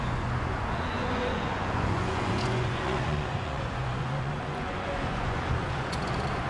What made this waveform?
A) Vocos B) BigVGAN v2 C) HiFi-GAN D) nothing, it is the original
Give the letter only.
A